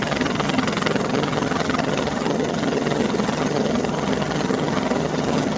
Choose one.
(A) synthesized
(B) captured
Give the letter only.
A